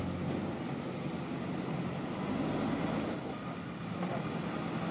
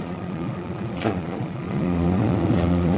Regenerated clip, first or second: second